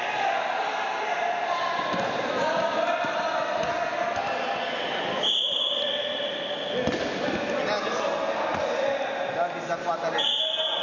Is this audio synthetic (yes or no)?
no